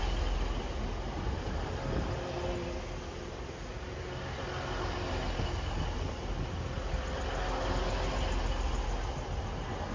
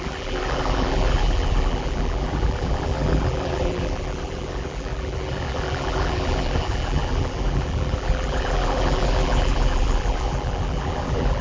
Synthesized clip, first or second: second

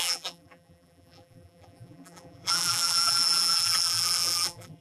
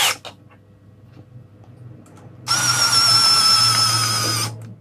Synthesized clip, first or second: first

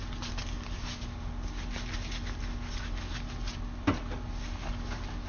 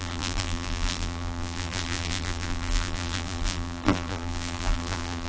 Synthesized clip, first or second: second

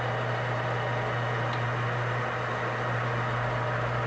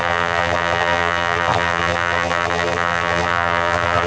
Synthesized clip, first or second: second